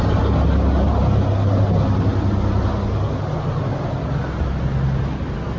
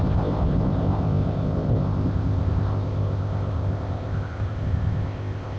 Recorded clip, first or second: first